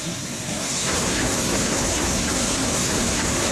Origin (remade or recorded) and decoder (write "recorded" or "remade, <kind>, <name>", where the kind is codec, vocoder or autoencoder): remade, codec, SNAC